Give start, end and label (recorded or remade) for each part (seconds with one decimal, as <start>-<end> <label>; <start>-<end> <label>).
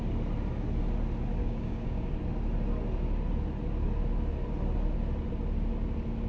0.0-1.4 recorded; 1.4-2.1 remade; 2.1-6.3 recorded